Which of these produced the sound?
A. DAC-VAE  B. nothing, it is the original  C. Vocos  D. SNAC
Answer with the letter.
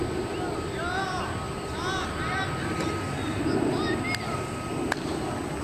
B